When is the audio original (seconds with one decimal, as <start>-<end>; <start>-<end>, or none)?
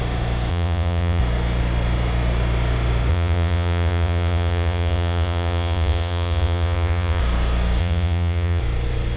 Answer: 0.0-0.5; 1.2-3.1; 7.2-7.8; 8.6-9.2